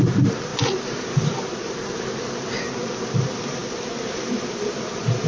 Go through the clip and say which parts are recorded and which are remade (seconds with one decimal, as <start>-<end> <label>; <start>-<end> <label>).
0.0-5.3 recorded